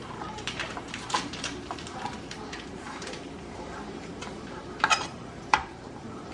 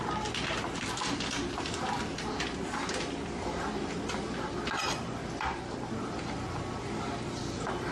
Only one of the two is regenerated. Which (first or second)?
first